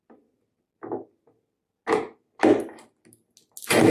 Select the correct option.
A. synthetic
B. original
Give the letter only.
B